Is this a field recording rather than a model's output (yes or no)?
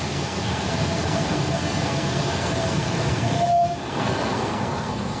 no